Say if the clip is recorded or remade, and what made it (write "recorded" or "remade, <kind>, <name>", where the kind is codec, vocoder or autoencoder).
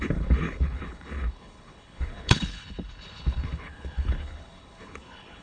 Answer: remade, codec, HILCodec